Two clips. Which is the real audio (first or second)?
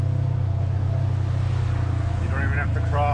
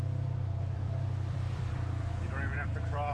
first